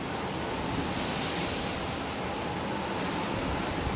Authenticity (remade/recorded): recorded